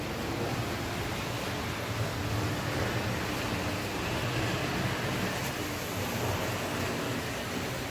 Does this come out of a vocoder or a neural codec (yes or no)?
no